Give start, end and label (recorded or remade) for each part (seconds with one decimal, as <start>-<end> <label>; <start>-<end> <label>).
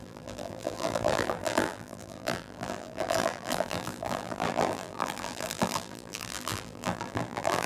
0.0-7.7 remade